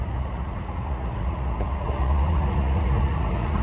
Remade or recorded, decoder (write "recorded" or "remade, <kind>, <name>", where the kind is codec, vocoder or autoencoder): remade, vocoder, Vocos